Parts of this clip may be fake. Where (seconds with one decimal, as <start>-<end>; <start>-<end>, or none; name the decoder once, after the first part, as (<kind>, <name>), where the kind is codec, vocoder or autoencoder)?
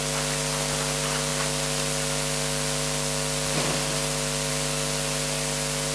none